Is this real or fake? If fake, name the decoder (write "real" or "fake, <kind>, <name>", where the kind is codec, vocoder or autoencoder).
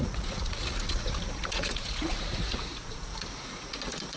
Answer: fake, vocoder, Vocos